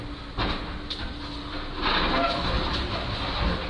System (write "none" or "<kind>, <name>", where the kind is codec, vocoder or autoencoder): none